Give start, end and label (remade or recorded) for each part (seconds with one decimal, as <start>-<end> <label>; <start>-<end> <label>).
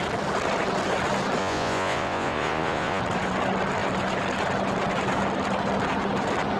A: 0.0-1.4 recorded; 1.4-3.0 remade; 3.0-6.6 recorded